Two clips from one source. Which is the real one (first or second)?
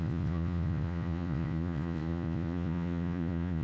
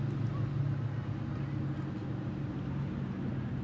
second